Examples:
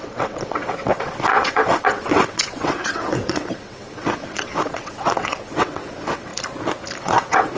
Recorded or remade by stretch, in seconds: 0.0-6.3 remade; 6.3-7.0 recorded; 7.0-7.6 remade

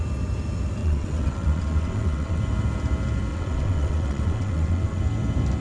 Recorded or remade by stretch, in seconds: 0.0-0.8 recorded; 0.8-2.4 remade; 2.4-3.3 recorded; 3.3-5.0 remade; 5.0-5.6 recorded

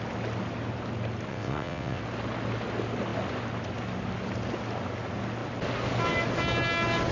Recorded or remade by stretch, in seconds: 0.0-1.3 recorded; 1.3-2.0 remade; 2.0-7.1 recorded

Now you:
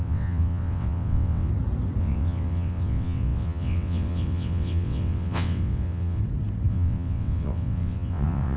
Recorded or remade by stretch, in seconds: 0.0-1.5 remade; 1.5-2.0 recorded; 2.0-6.2 remade; 6.2-6.7 recorded; 6.7-8.6 remade

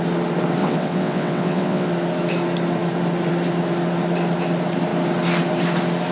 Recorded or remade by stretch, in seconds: 0.0-0.6 recorded; 0.6-1.9 remade; 1.9-6.1 recorded

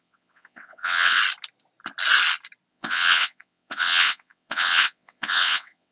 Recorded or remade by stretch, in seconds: 0.0-1.2 remade; 1.2-2.7 recorded; 2.7-5.9 remade

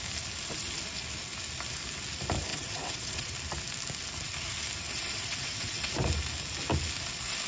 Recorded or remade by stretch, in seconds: 0.0-2.5 recorded; 2.5-3.3 remade; 3.3-4.9 recorded; 4.9-5.9 remade; 5.9-7.5 recorded

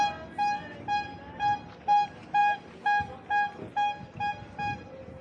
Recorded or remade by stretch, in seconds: 0.0-5.2 recorded